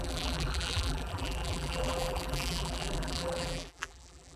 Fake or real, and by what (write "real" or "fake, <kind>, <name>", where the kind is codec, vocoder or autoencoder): fake, vocoder, BigVGAN v2